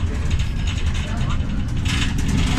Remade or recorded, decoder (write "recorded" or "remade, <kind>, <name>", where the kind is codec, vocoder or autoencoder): recorded